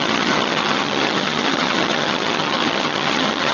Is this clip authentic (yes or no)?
no